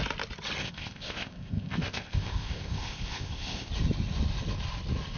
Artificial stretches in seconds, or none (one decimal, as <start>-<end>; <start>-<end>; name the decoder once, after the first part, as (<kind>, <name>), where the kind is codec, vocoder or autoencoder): 0.6-3.7 (codec, ZipCodec)